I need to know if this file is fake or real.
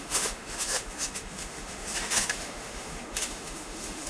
fake